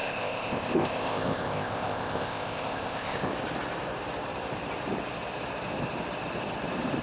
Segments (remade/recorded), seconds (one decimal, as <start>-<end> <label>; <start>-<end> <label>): 0.0-3.3 remade; 3.3-7.0 recorded